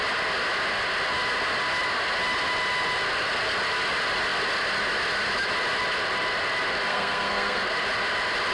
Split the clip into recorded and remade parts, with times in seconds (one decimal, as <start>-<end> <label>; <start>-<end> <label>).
0.0-6.9 recorded; 6.9-7.6 remade; 7.6-8.5 recorded